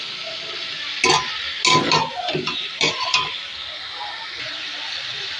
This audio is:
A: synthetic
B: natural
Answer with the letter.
B